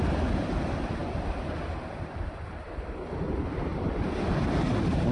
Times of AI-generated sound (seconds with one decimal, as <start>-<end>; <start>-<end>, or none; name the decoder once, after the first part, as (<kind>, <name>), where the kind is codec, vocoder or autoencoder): none

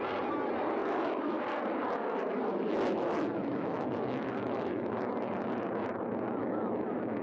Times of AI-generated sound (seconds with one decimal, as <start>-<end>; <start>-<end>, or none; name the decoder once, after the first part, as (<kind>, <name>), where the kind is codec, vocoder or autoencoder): 0.8-1.4 (autoencoder, DAC-VAE); 2.5-5.1; 6.4-7.2

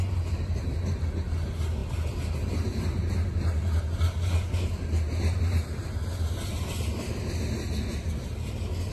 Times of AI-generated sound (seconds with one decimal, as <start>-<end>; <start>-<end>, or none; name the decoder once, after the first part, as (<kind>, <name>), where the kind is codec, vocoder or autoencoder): none